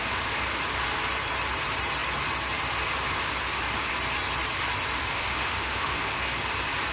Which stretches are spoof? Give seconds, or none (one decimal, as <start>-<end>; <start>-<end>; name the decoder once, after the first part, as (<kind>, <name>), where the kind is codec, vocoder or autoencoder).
5.0-6.0 (autoencoder, DAC-VAE)